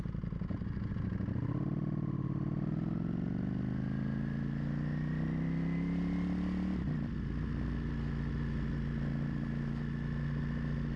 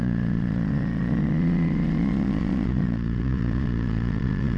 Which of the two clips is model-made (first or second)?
second